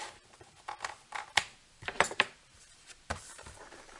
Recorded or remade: remade